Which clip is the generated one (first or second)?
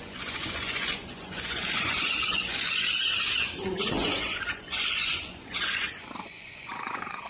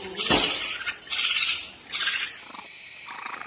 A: first